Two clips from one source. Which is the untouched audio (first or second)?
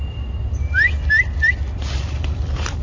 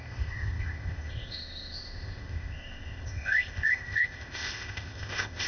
first